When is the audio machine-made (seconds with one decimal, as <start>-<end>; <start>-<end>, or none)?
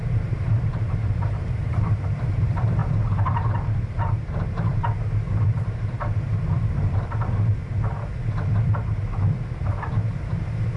0.0-7.6; 9.2-10.8